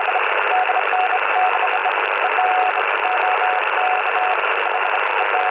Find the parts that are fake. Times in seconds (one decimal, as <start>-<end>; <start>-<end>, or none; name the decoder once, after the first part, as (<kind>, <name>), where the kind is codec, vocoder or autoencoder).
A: none